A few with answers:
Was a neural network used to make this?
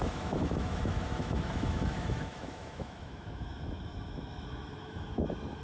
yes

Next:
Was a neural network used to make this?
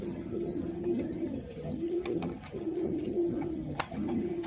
yes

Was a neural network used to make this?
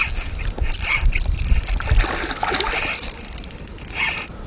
no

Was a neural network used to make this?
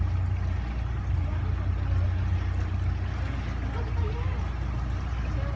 no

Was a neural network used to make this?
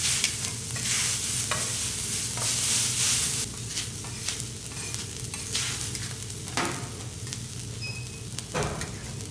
no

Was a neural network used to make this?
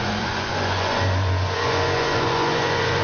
yes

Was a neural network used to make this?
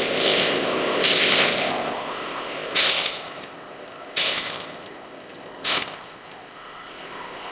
yes